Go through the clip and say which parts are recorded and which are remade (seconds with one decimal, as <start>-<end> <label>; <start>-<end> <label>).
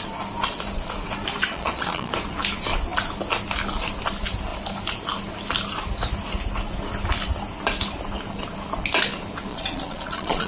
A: 0.0-1.5 recorded; 1.5-2.1 remade; 2.1-9.5 recorded; 9.5-10.5 remade